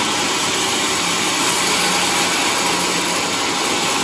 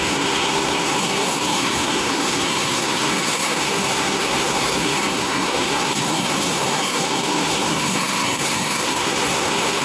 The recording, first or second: first